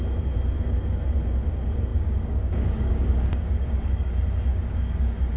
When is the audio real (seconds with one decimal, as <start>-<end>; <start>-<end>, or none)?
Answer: 0.0-1.9; 4.1-4.5